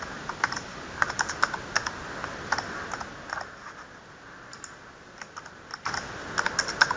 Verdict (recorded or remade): recorded